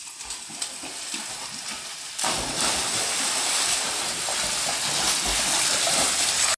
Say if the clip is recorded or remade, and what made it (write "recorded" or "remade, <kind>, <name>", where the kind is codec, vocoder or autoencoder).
recorded